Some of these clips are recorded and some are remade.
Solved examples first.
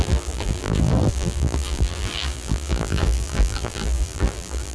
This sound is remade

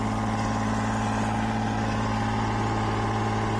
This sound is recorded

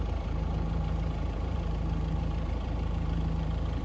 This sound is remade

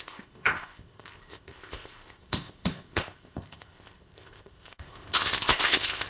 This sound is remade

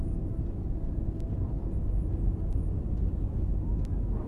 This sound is recorded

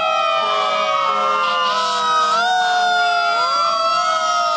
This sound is recorded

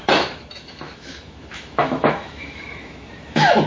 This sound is remade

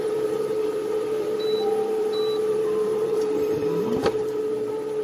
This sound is remade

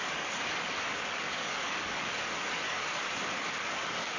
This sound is remade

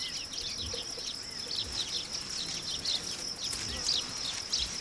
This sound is recorded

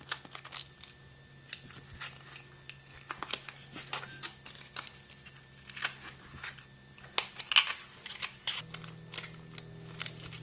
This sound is recorded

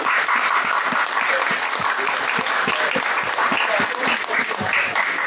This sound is recorded